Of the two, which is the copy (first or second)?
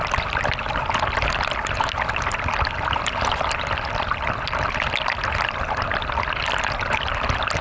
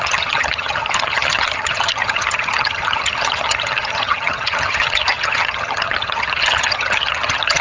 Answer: second